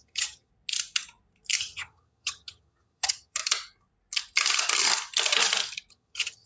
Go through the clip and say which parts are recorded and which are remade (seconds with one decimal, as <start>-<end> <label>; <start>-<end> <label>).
0.0-0.5 remade; 0.5-1.6 recorded; 1.6-3.4 remade; 3.4-5.9 recorded; 5.9-6.5 remade